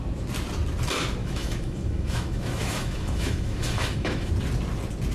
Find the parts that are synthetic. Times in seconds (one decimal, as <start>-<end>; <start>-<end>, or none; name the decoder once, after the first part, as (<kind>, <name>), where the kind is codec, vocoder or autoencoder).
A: 1.2-4.3 (autoencoder, DAC-VAE)